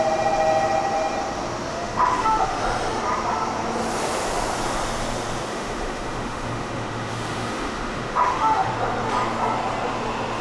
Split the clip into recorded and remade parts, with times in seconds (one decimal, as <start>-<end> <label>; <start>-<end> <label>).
0.0-1.7 recorded; 1.7-2.6 remade; 2.6-5.5 recorded; 5.5-8.7 remade; 8.7-10.4 recorded